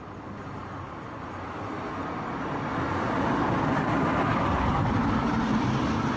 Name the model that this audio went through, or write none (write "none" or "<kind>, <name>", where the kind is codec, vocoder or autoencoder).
none